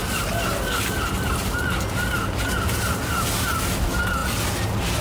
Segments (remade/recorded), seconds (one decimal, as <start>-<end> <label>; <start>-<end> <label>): 0.0-5.0 recorded